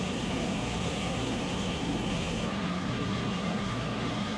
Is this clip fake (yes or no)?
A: yes